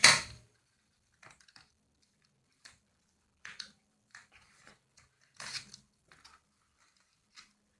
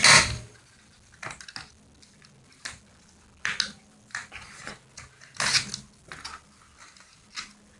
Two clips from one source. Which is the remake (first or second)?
first